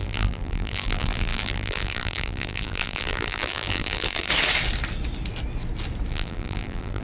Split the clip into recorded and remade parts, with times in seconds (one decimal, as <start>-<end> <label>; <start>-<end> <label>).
0.0-4.3 remade; 4.3-6.1 recorded; 6.1-7.0 remade